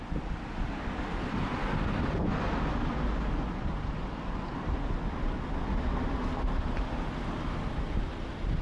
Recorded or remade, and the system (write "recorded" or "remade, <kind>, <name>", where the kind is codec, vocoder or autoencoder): recorded